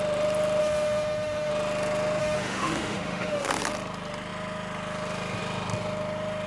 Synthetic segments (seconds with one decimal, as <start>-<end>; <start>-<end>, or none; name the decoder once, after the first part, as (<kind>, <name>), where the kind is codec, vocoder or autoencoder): 0.6-1.5 (autoencoder, DAC-VAE); 2.2-3.5